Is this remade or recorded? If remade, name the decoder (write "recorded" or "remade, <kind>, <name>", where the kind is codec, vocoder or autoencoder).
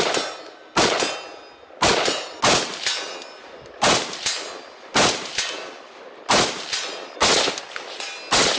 recorded